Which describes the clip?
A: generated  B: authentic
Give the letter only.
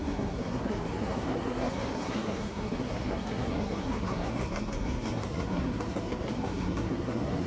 A